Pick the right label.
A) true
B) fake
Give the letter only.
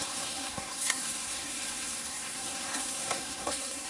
B